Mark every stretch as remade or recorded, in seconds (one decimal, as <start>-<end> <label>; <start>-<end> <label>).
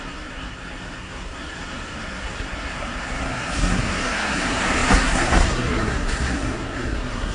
0.0-7.3 remade